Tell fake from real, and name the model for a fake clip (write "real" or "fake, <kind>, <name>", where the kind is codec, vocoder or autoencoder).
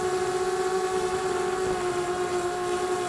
real